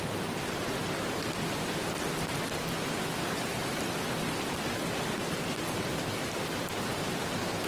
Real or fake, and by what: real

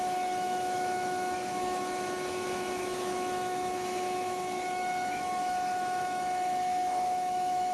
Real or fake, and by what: fake, autoencoder, DAC-VAE